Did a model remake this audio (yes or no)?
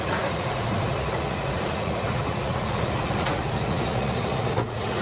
yes